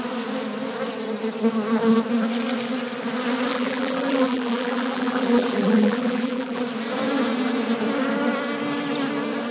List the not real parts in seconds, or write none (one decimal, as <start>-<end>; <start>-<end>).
3.5-6.6